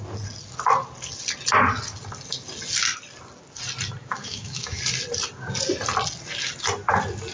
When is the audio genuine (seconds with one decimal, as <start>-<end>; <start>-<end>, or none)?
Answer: 0.0-4.0; 4.8-7.3